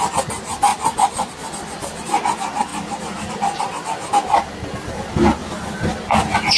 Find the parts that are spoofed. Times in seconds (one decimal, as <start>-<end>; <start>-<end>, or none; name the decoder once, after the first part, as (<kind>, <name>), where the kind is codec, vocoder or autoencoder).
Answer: 0.7-1.6 (vocoder, BigVGAN v2); 5.4-6.6